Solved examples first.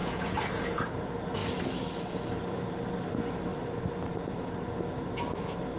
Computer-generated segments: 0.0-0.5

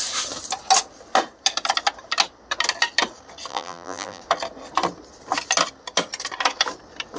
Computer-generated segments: 3.5-4.2

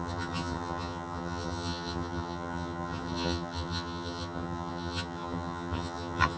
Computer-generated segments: 0.0-6.4

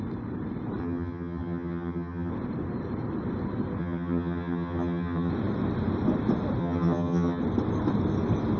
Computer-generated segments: 0.8-2.3; 3.8-5.3; 6.6-7.4